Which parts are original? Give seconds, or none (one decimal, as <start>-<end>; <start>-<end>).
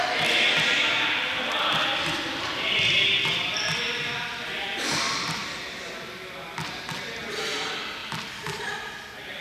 0.0-8.0; 8.6-9.4